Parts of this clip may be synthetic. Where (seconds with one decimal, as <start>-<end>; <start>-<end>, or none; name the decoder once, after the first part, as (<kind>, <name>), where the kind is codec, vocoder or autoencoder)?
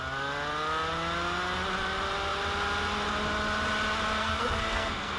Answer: 4.2-5.2 (codec, SNAC)